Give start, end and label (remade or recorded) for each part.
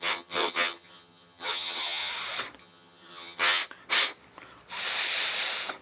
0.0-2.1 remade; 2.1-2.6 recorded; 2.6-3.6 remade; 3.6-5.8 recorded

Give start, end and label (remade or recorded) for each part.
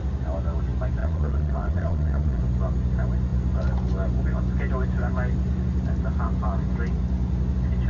0.0-1.0 recorded; 1.0-2.4 remade; 2.4-7.9 recorded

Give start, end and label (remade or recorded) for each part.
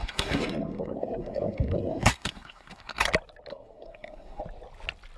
0.0-3.1 remade; 3.1-3.5 recorded; 3.5-4.4 remade; 4.4-5.2 recorded